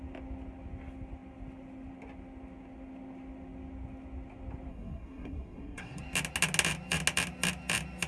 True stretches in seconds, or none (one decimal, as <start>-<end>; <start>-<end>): 0.0-4.7; 6.0-8.1